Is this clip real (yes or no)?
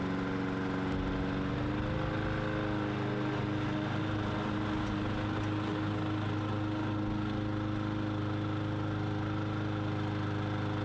yes